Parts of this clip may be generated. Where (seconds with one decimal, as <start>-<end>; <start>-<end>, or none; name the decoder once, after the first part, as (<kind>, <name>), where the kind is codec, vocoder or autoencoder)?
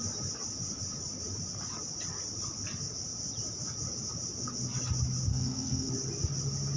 5.3-5.9 (codec, SNAC)